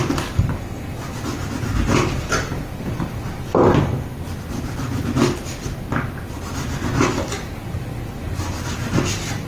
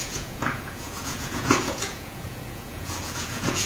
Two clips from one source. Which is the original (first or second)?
first